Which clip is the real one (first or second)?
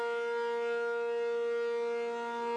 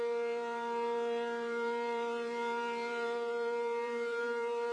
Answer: first